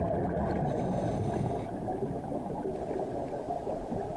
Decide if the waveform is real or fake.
real